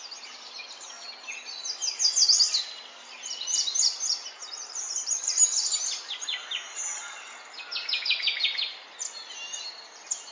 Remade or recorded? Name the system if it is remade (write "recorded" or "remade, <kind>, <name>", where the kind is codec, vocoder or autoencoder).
recorded